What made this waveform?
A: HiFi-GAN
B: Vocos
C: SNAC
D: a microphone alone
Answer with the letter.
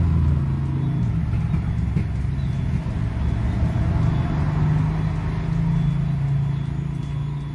D